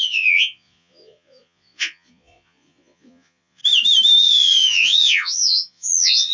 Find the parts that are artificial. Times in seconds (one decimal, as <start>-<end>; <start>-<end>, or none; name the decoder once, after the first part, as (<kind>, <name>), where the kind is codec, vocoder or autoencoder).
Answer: 0.0-3.6 (vocoder, Vocos); 4.2-6.3